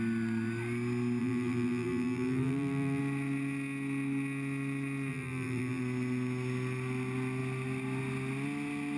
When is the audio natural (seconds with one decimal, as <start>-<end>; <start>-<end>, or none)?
0.0-1.2; 3.0-5.1; 5.8-9.0